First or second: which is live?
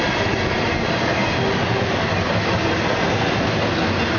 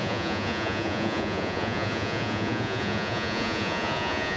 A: first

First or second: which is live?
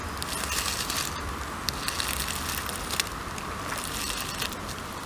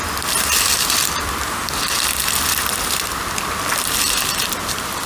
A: first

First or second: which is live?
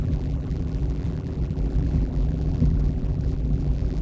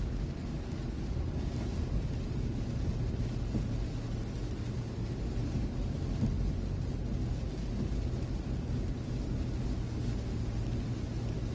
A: second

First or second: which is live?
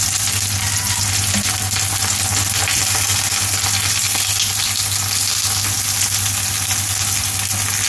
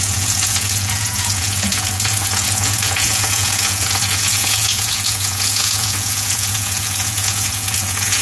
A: first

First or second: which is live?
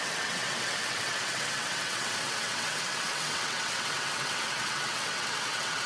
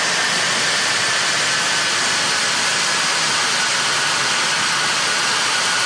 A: second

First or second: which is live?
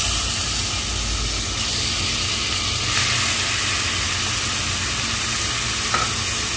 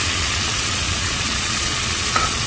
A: first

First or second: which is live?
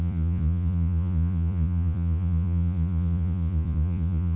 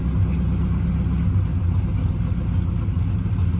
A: second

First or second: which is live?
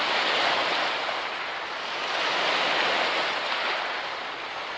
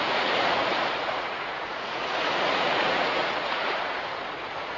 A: first